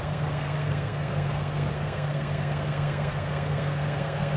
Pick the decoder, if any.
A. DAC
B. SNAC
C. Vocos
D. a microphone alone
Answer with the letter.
B